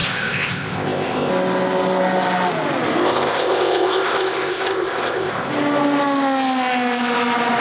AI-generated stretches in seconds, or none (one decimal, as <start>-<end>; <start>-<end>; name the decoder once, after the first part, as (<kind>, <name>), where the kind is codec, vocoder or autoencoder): 0.0-1.3 (codec, ZipCodec); 3.0-5.5

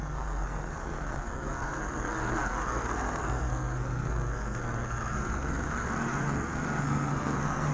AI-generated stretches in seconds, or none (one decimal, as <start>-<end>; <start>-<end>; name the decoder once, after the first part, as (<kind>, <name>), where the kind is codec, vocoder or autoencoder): 0.0-7.7 (codec, SNAC)